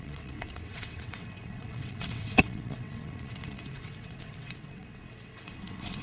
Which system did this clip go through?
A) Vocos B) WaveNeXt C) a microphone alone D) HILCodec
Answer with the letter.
B